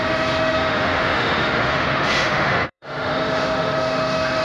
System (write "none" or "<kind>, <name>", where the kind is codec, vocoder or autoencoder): autoencoder, DAC-VAE